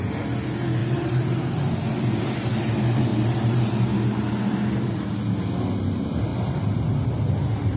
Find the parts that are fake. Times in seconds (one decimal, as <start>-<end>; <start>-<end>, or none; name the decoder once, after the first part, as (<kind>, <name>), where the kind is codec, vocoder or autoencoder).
6.3-7.1 (vocoder, BigVGAN v2)